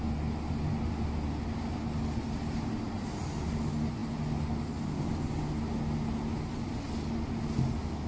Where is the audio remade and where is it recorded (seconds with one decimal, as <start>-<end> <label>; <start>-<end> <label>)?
0.0-8.1 recorded